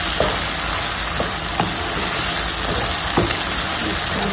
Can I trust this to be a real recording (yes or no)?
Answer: yes